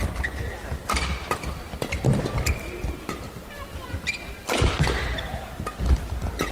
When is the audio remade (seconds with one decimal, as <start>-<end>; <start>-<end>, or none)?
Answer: none

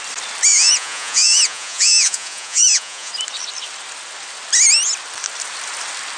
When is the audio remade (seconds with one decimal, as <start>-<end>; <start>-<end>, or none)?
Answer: 0.5-3.1

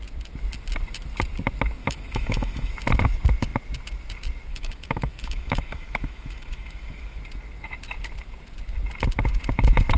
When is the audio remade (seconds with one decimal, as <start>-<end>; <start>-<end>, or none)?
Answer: 1.8-2.7; 4.5-7.2

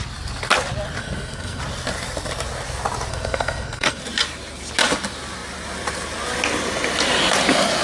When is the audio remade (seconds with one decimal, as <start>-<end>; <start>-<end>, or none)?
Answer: 1.0-1.6; 3.1-4.0